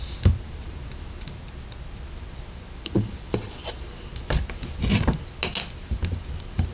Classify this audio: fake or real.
real